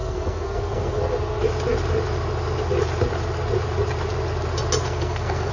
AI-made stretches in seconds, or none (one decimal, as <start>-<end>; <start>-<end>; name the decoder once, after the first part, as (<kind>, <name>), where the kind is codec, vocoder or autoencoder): 0.0-1.0 (codec, SNAC); 4.8-5.5